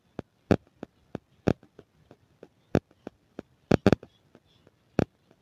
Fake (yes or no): no